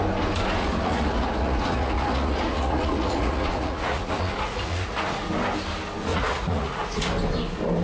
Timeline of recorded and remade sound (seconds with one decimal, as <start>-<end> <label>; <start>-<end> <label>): 0.0-0.6 recorded; 0.6-5.3 remade; 5.3-6.1 recorded; 6.1-7.1 remade; 7.1-7.8 recorded